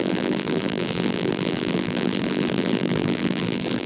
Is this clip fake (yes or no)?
yes